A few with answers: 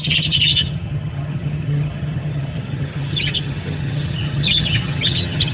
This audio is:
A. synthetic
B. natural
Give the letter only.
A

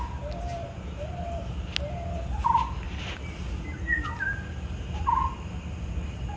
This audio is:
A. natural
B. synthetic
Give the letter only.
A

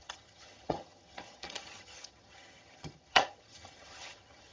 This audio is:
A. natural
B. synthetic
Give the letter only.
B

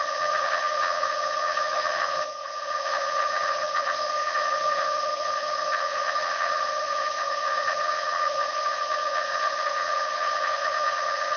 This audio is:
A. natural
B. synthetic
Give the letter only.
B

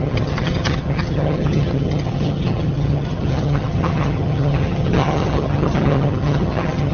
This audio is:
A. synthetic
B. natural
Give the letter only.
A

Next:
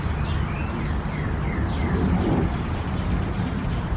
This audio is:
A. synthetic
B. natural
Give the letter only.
B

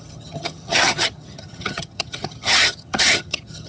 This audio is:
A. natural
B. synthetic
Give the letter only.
B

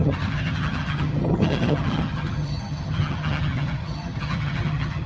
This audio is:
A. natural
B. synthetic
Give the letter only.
B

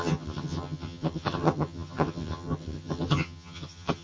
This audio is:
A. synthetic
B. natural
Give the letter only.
A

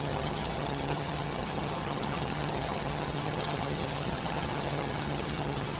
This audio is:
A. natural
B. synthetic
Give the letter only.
B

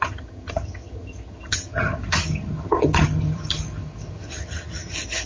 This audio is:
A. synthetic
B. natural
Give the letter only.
A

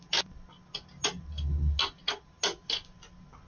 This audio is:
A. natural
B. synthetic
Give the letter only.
A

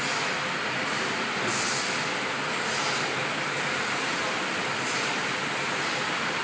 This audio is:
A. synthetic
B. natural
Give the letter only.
B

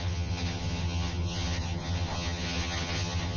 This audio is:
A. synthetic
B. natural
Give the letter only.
A